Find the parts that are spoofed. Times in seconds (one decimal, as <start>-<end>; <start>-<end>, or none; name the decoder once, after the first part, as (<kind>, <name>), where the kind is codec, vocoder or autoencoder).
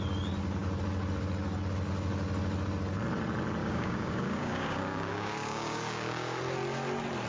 3.6-6.4 (codec, DAC)